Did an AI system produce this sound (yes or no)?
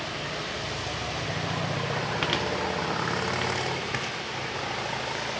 no